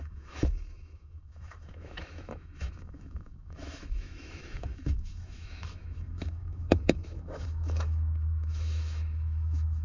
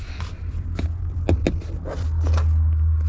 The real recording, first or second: second